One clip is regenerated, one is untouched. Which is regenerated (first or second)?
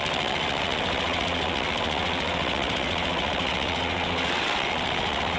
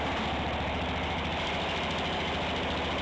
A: first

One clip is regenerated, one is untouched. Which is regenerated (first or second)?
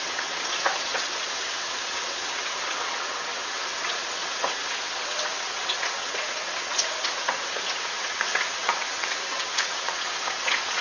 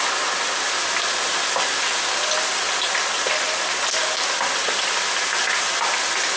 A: first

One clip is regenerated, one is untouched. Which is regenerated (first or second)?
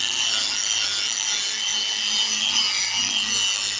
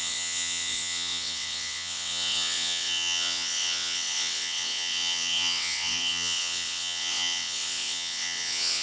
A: second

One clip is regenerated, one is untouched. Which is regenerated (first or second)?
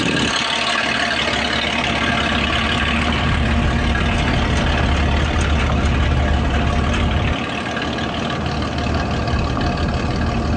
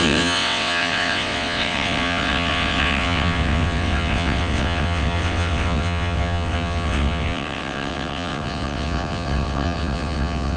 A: second